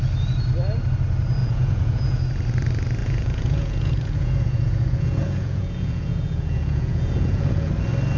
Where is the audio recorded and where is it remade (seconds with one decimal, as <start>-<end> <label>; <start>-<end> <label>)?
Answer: 0.0-1.4 recorded; 1.4-2.2 remade; 2.2-3.0 recorded; 3.0-7.7 remade; 7.7-8.2 recorded